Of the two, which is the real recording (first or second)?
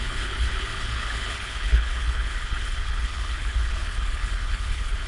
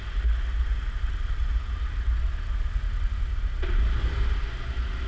second